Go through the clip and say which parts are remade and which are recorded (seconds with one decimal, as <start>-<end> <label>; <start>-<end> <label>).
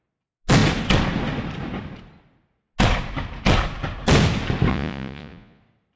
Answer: 0.0-4.7 recorded; 4.7-5.6 remade; 5.6-6.0 recorded